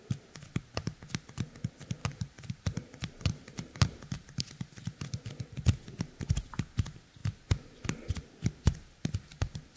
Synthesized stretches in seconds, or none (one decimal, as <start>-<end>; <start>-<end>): 2.0-4.4